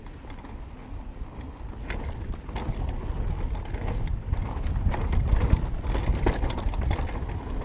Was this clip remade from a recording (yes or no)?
no